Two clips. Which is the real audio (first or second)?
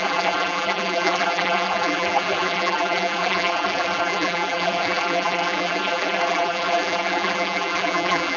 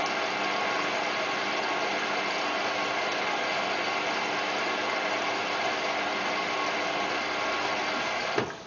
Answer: second